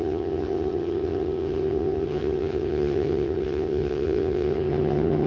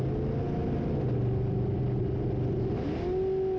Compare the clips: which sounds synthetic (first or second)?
first